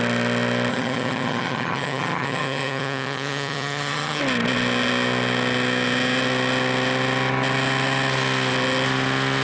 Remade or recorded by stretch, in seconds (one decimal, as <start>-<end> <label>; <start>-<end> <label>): 0.0-0.7 recorded; 0.7-4.2 remade; 4.2-9.4 recorded